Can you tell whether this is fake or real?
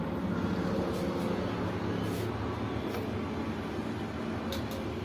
real